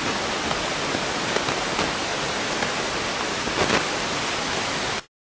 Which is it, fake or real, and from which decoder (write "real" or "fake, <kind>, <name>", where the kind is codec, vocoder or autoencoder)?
real